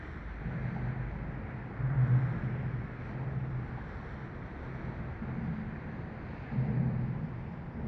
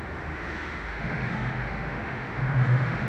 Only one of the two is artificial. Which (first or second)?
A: second